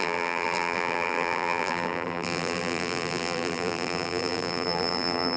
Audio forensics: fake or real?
fake